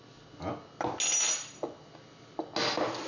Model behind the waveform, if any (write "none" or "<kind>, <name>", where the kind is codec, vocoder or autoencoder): none